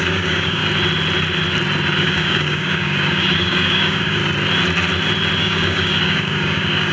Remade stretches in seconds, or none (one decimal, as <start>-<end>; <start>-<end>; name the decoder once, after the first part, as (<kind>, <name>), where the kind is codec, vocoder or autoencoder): 0.0-0.6 (codec, DAC); 2.0-4.2; 5.4-6.9